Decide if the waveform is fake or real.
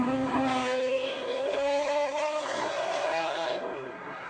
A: fake